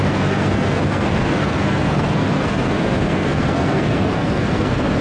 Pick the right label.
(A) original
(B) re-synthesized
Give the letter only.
B